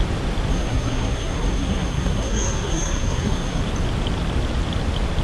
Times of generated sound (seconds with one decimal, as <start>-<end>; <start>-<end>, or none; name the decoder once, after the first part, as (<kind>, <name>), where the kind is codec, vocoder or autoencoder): 0.5-3.6 (codec, SNAC)